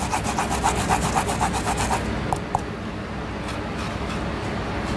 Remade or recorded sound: recorded